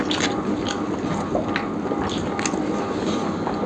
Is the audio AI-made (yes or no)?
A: no